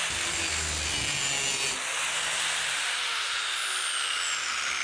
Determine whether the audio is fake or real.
real